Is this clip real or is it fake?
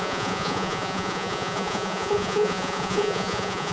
fake